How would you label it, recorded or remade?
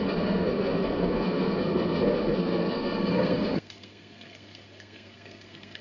remade